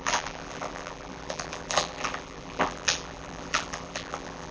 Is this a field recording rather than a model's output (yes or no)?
no